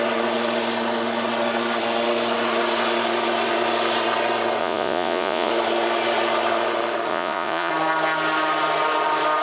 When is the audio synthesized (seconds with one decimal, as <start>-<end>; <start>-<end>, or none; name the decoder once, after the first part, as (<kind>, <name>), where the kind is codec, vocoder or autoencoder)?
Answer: 4.6-5.5 (vocoder, Vocos); 7.1-7.7